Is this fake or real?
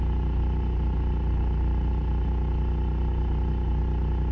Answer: real